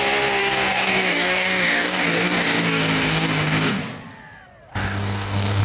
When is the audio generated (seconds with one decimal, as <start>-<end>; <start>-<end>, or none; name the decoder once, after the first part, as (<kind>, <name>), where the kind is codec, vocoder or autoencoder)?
0.4-3.8 (codec, DAC); 4.7-5.6